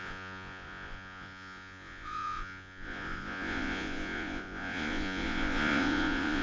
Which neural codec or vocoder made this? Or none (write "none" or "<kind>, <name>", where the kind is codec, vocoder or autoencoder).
vocoder, Vocos